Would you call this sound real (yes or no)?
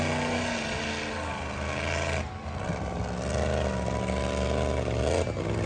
yes